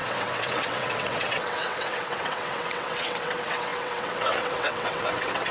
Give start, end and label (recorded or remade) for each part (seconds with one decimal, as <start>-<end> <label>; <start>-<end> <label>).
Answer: 0.0-5.5 remade